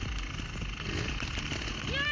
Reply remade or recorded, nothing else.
recorded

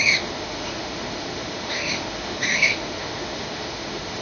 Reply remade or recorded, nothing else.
remade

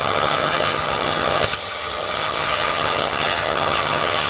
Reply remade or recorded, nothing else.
remade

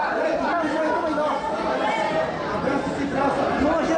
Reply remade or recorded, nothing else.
recorded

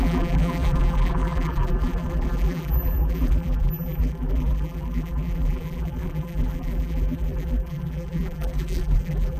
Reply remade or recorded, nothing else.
remade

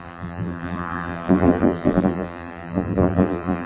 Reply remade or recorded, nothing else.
remade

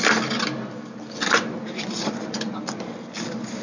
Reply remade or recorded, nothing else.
recorded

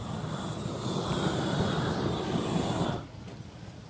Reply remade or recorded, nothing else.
recorded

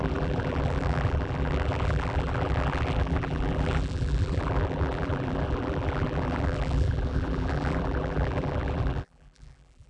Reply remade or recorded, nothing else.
remade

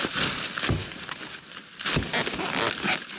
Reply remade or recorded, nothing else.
recorded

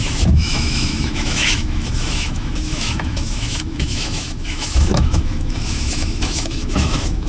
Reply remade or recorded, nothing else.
remade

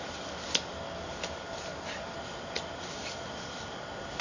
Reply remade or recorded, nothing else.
recorded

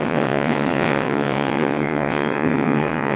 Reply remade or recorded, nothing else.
remade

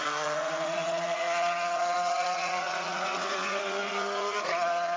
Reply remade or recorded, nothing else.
remade